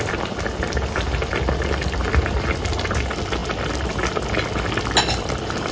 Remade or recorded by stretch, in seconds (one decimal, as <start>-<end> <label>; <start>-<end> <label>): 0.0-5.7 recorded